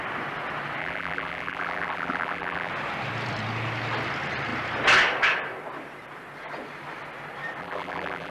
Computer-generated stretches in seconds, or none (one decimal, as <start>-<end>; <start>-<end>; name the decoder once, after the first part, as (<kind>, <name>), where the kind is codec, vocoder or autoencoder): 0.8-2.7 (vocoder, BigVGAN v2); 7.6-8.3